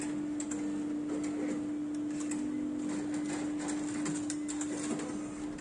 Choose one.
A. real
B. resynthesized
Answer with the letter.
A